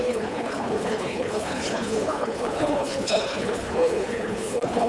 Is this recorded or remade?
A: remade